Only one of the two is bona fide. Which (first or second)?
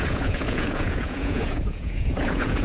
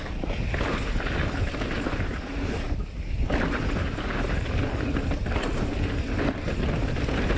second